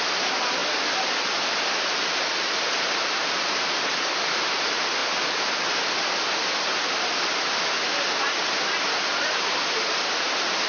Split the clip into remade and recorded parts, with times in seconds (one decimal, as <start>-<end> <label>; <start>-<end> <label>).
0.0-10.7 recorded